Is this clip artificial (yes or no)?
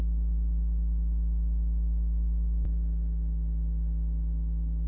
yes